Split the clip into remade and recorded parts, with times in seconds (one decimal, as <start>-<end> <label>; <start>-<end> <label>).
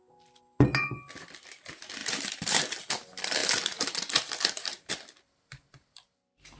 0.0-2.0 recorded; 2.0-2.8 remade; 2.8-3.4 recorded; 3.4-4.9 remade; 4.9-6.6 recorded